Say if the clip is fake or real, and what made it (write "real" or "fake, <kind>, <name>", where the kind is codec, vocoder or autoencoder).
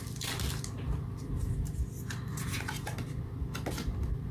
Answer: real